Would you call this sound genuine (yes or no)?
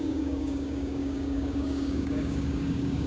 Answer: no